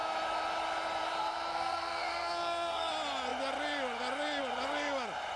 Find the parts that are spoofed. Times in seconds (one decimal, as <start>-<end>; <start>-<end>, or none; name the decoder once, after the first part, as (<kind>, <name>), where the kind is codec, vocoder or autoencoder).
1.5-2.9 (codec, SNAC)